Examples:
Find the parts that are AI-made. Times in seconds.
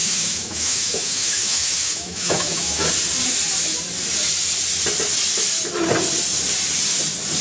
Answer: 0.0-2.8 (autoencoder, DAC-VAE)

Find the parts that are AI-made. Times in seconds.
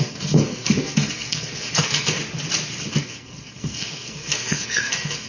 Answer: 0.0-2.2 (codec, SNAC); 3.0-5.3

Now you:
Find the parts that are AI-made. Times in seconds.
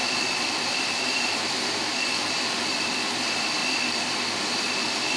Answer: 0.0-3.1 (vocoder, BigVGAN v2); 3.6-5.2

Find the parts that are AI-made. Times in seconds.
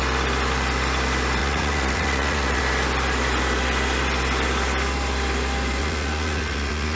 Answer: 1.4-2.6 (vocoder, Vocos); 5.8-7.0